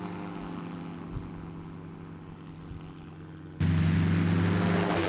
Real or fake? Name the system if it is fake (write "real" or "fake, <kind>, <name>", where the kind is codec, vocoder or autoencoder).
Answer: real